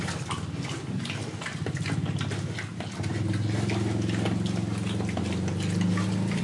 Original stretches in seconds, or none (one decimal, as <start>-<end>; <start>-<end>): 0.0-6.4